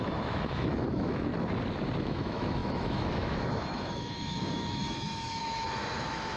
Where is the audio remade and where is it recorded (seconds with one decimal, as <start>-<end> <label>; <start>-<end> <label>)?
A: 0.0-1.3 remade; 1.3-2.0 recorded; 2.0-6.4 remade